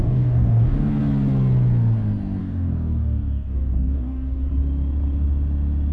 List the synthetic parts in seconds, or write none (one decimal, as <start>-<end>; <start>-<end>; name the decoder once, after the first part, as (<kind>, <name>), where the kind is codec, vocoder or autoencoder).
0.0-1.0 (codec, DAC); 2.4-4.5